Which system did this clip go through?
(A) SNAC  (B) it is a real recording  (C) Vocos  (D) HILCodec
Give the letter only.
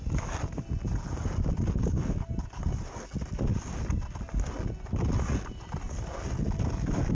B